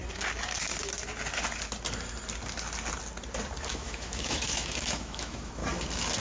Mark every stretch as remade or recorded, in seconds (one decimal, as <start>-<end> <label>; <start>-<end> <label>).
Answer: 0.0-3.7 recorded; 3.7-5.6 remade; 5.6-6.2 recorded